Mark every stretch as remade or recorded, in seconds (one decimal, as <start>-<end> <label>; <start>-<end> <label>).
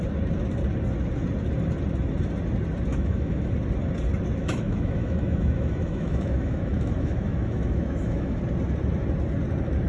0.0-2.9 recorded; 2.9-3.5 remade; 3.5-4.4 recorded; 4.4-8.4 remade; 8.4-9.9 recorded